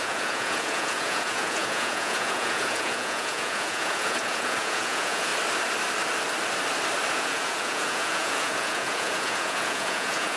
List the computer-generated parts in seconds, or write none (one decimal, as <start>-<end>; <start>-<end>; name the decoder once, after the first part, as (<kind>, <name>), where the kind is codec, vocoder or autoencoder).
0.0-5.3 (vocoder, Vocos); 7.1-10.4